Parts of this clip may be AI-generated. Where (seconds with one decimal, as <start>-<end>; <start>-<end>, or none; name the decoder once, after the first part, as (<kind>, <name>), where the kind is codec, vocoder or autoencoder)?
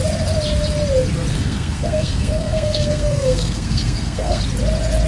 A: 1.3-4.4 (codec, SNAC)